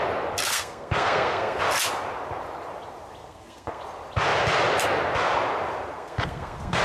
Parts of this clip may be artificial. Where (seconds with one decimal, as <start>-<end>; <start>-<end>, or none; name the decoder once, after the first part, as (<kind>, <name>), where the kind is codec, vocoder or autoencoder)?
0.5-1.6 (codec, SNAC); 3.2-3.8; 5.9-6.8